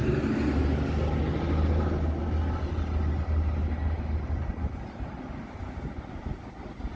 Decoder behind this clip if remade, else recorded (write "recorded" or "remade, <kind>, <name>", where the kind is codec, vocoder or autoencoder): recorded